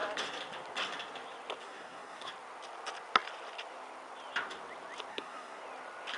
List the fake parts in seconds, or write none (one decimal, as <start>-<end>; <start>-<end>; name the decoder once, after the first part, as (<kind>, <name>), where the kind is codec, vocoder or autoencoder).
1.6-2.3 (codec, SNAC); 5.1-5.6